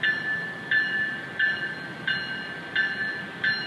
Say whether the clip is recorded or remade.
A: recorded